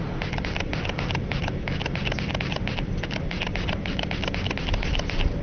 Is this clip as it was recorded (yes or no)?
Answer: no